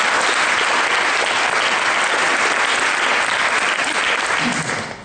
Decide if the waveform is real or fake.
real